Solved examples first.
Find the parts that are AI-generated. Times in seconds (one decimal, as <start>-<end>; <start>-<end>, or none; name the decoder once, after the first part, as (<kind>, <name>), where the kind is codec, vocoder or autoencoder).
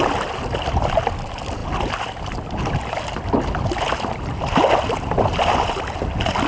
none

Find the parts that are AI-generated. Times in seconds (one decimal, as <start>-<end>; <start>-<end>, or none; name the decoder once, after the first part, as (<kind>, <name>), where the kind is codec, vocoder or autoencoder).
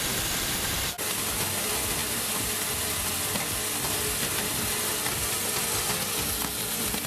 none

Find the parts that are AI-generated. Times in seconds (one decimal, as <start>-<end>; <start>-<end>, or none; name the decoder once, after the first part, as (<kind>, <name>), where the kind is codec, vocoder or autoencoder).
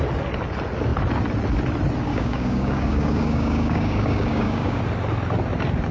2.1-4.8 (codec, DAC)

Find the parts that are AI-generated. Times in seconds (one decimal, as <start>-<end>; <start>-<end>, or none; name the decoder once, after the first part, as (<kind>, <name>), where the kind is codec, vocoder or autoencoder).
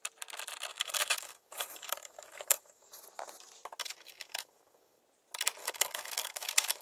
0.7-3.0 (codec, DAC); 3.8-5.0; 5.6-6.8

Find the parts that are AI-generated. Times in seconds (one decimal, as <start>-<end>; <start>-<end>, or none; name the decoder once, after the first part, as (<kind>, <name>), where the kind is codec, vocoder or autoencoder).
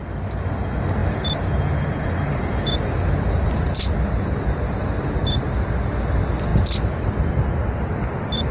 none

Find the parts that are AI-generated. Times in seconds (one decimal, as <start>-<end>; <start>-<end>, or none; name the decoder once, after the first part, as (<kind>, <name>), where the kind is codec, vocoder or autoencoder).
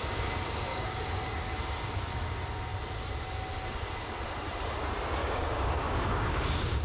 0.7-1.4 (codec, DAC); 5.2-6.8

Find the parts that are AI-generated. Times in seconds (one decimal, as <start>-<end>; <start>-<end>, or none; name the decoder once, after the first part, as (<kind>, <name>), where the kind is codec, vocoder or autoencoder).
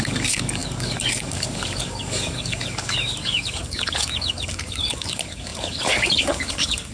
0.0-6.9 (codec, DAC)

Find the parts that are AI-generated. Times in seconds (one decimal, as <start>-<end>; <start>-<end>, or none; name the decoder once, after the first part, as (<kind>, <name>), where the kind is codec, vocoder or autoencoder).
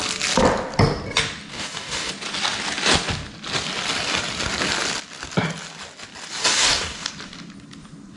1.5-2.1 (codec, DAC); 6.4-7.1